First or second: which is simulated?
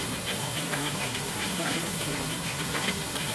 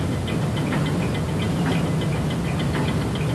first